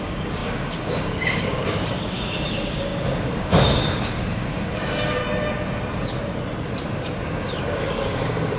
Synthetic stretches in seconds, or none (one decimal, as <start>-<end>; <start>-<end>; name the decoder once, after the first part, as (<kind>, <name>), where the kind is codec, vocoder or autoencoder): 0.0-5.2 (codec, DAC); 7.2-8.6